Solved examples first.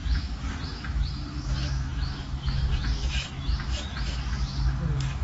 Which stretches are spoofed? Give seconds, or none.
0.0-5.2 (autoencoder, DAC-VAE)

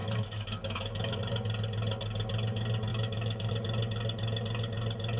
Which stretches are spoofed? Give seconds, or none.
0.0-1.2 (autoencoder, DAC-VAE); 2.9-3.5

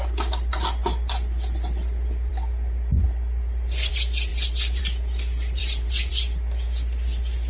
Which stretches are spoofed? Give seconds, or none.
5.6-6.1 (vocoder, BigVGAN v2)

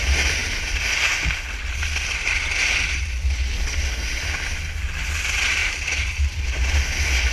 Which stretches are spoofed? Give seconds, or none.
5.6-6.8 (vocoder, BigVGAN v2)

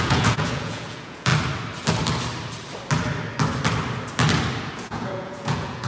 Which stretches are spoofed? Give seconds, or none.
0.0-1.3 (vocoder, Vocos); 4.8-5.9

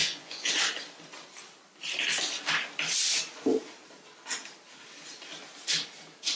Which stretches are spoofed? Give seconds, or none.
0.0-0.5 (vocoder, Vocos)

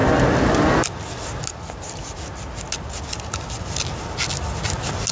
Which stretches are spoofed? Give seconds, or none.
none